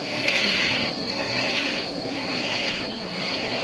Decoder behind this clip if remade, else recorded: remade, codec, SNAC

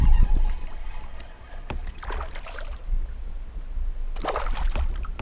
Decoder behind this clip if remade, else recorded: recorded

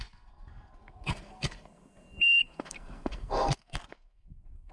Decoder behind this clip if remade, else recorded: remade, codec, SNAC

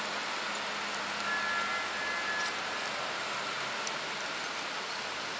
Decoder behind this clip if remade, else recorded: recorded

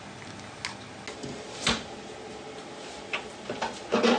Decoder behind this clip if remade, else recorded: recorded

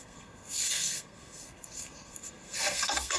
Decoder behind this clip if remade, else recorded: remade, codec, SNAC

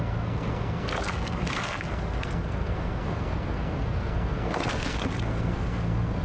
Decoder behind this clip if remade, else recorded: remade, codec, SNAC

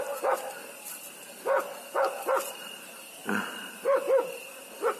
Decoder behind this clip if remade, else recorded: recorded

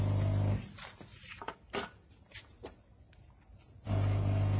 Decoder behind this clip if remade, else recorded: recorded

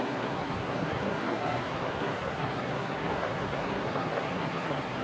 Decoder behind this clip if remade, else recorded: remade, codec, SNAC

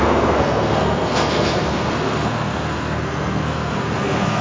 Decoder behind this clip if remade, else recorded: remade, codec, SNAC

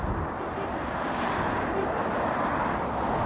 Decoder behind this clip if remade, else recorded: recorded